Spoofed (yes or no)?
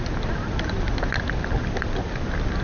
no